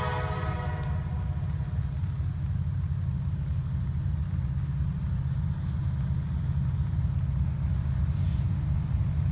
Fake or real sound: real